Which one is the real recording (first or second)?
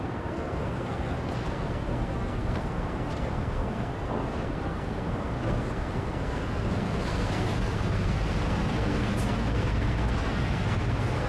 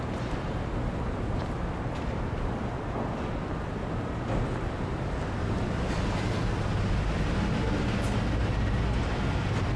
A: second